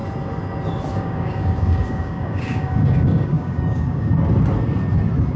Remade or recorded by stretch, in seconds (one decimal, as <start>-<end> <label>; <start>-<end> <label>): 0.0-0.9 recorded; 0.9-4.1 remade; 4.1-5.4 recorded